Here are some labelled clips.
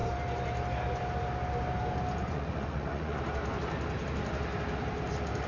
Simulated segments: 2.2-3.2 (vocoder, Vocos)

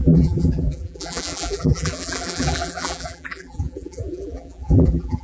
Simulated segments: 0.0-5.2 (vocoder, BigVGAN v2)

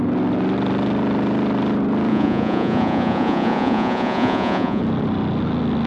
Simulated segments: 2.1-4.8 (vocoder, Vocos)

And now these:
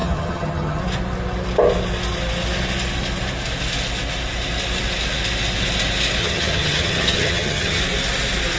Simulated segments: 0.0-0.8 (vocoder, HiFi-GAN); 6.2-7.8

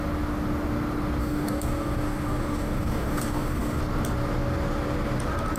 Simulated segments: 1.2-3.8 (codec, DAC)

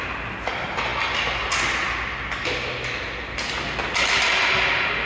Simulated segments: none

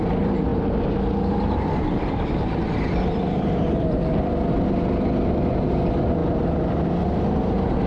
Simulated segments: 0.5-4.3 (vocoder, BigVGAN v2)

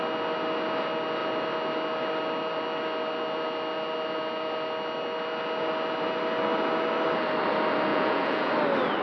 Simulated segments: 7.9-8.5 (vocoder, Vocos)